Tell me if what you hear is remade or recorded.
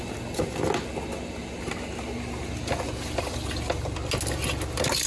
recorded